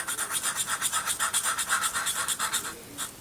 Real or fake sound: real